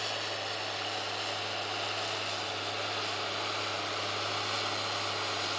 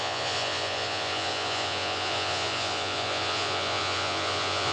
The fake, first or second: second